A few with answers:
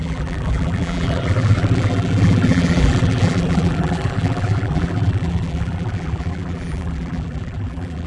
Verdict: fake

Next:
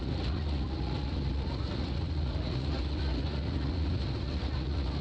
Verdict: fake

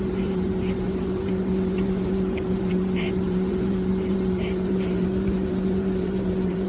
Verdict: fake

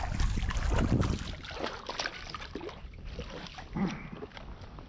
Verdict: real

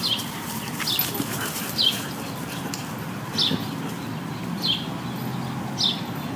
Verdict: real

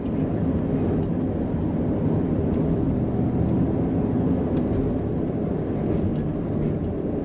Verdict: real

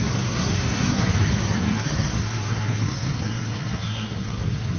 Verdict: fake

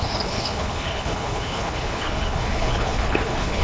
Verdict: fake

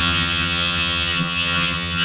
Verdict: fake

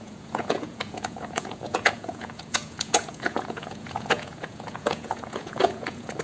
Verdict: fake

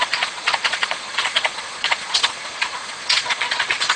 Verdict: fake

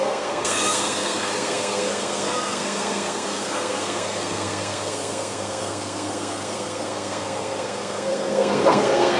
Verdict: fake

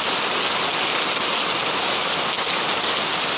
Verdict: real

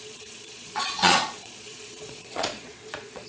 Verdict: fake